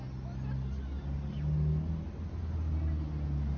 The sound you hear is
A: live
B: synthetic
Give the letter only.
A